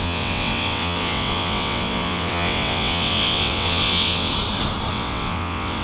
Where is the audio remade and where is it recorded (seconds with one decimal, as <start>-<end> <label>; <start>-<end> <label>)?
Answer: 0.0-4.3 remade; 4.3-4.9 recorded; 4.9-5.8 remade